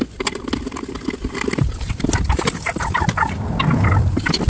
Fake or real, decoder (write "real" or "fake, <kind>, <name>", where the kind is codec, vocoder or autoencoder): real